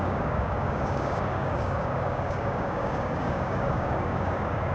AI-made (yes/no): yes